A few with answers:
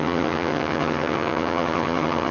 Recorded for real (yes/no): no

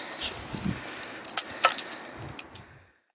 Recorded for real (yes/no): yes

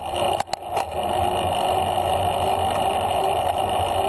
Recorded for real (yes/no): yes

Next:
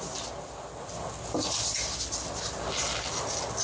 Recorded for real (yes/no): yes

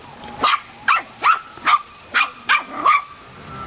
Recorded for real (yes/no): yes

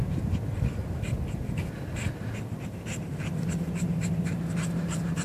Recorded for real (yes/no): yes